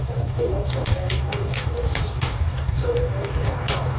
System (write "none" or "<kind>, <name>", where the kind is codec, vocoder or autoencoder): codec, DAC